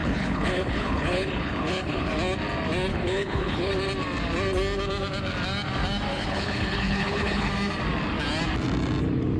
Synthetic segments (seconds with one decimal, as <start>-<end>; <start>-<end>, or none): 0.0-2.1; 2.9-3.7; 6.1-7.5